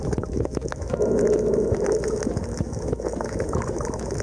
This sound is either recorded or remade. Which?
remade